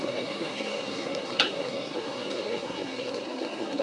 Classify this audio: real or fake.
fake